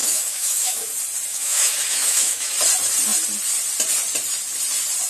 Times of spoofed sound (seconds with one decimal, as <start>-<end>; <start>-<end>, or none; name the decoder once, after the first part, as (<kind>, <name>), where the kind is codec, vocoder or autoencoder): 0.0-0.9 (autoencoder, DAC-VAE); 1.3-2.5